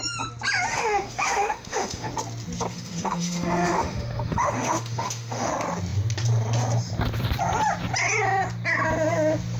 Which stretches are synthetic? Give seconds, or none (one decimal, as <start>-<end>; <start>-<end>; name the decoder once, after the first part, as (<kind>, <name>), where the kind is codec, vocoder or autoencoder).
0.7-2.1 (autoencoder, DAC-VAE); 2.7-5.5

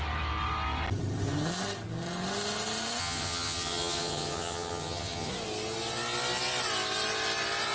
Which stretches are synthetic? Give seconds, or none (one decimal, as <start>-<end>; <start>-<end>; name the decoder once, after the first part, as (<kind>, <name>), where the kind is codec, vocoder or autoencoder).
3.0-5.3 (vocoder, HiFi-GAN)

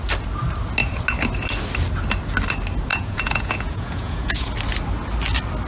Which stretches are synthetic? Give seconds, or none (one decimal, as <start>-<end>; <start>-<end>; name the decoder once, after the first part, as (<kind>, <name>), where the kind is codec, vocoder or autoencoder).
2.9-4.5 (vocoder, Vocos)

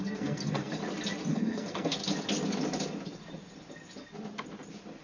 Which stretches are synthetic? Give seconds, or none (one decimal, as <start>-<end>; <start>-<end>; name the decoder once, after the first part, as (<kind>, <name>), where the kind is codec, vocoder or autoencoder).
0.0-0.8 (codec, SNAC); 1.3-2.0

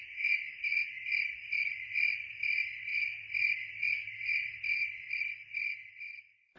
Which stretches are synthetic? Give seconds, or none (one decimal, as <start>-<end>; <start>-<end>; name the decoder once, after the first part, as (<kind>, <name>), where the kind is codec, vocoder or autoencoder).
none

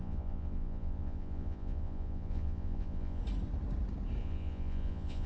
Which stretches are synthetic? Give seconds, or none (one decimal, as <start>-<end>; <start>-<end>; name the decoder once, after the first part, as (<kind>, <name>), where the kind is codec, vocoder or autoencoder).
0.0-3.2 (vocoder, Vocos); 4.2-5.3